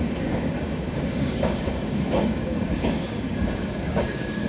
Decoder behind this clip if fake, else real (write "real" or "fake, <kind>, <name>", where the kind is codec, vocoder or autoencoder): fake, codec, DAC